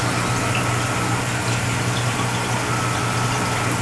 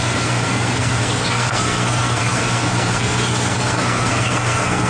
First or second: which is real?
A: first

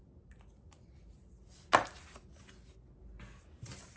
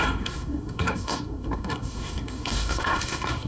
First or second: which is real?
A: first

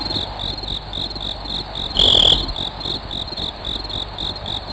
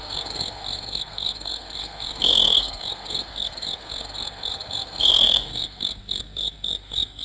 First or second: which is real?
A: first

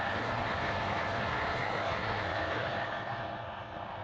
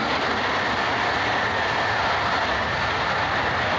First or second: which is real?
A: second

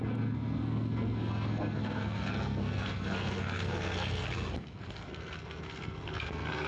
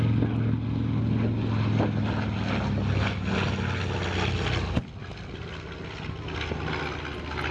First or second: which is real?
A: second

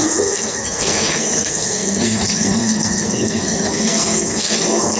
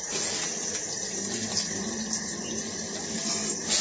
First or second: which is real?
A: second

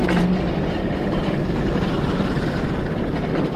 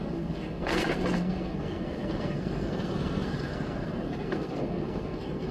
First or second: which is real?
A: first